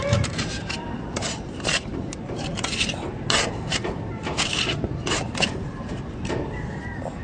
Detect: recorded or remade remade